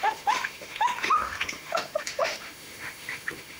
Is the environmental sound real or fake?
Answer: fake